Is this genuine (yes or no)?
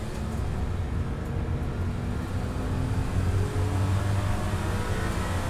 yes